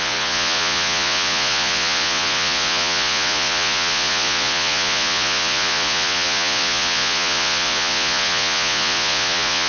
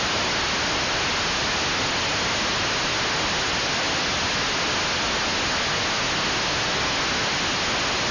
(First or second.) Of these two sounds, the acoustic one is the second